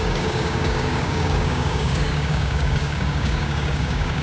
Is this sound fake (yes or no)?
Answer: yes